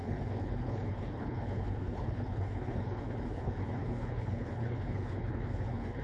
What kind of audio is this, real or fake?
fake